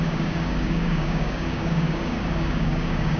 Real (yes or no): no